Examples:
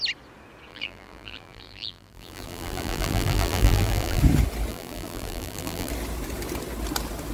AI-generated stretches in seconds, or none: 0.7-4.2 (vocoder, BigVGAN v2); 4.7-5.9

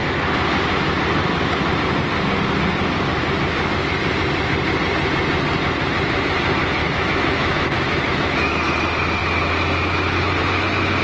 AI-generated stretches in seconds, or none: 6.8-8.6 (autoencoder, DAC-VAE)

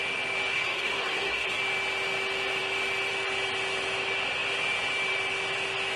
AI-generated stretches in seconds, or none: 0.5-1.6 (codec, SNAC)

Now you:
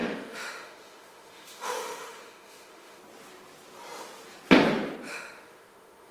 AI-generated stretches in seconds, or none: 0.0-3.0 (autoencoder, DAC-VAE); 5.1-6.1